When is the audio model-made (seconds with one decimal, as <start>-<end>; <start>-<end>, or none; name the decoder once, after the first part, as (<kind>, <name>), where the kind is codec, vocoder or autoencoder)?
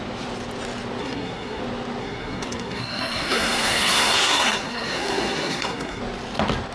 1.0-1.6 (codec, SNAC); 2.0-6.0